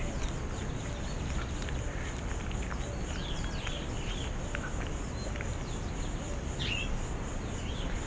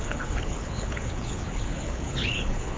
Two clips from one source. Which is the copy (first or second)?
second